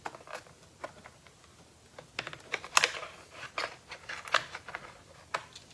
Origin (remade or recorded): recorded